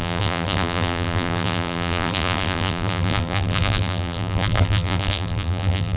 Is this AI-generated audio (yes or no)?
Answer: yes